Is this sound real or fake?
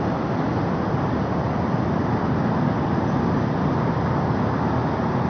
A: real